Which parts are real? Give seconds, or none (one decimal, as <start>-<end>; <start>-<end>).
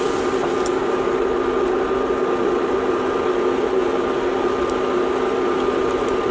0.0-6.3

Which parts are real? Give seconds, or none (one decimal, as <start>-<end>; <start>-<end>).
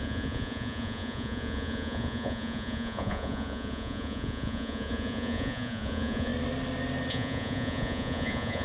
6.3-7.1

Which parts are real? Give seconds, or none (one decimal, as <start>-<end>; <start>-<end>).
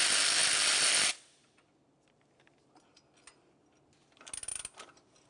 0.0-5.3